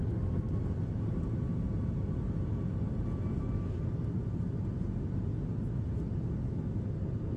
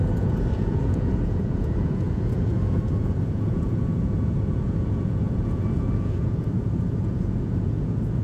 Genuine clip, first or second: first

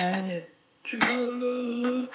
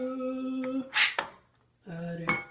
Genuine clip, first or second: second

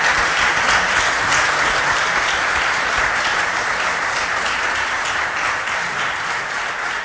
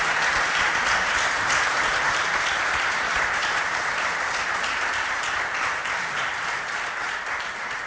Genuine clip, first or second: first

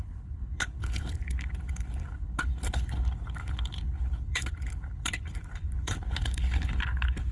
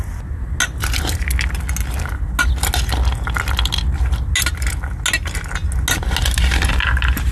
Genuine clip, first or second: second